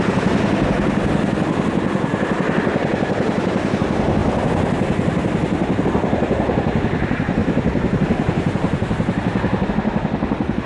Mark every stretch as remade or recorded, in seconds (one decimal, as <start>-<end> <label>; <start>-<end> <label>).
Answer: 0.0-7.4 recorded; 7.4-9.7 remade; 9.7-10.7 recorded